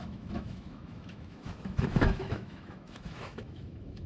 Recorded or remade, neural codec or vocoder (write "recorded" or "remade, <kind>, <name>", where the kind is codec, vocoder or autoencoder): remade, autoencoder, DAC-VAE